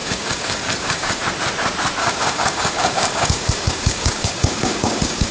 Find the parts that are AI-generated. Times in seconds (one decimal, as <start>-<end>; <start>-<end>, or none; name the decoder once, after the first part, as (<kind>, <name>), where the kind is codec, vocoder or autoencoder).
0.0-1.2 (codec, DAC); 2.0-5.3